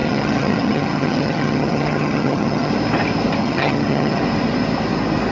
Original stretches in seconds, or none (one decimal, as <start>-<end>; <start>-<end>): 2.7-3.4; 4.2-5.3